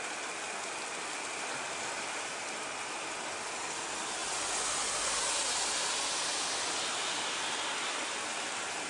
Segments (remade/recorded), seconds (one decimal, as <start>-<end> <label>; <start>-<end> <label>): 0.0-8.9 recorded